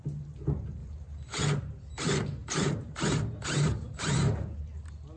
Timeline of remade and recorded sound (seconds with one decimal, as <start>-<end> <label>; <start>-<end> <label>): 0.0-0.8 recorded; 0.8-1.4 remade; 1.4-2.4 recorded; 2.4-4.3 remade; 4.3-5.2 recorded